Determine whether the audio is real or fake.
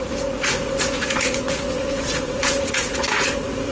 fake